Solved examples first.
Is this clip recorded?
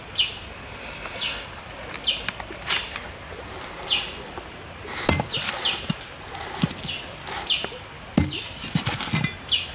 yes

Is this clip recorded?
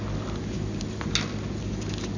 yes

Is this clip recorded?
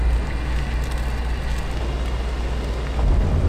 yes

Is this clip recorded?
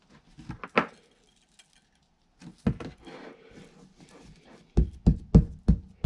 yes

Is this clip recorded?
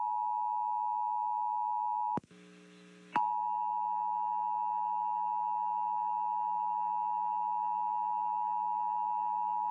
yes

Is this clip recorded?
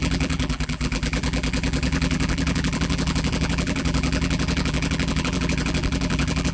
no